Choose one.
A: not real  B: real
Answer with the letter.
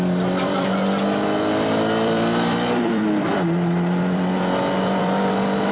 A